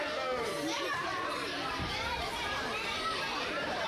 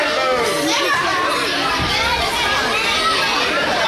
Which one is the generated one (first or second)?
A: first